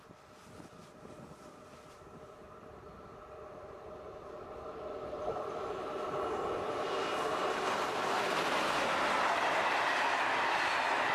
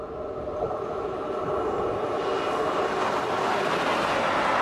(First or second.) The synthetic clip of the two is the first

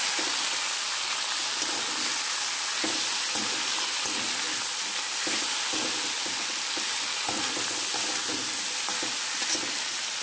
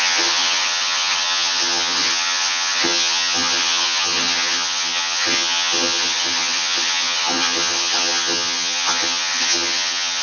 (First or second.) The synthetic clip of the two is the second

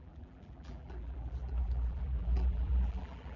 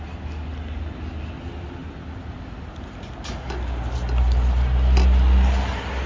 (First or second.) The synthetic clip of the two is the first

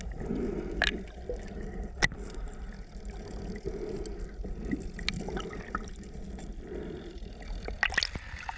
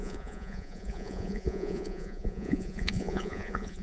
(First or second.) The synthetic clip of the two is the second